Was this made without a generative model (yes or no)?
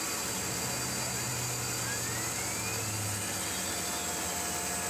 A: yes